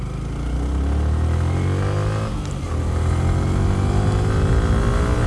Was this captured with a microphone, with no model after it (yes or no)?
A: yes